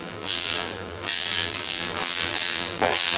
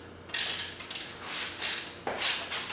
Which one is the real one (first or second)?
second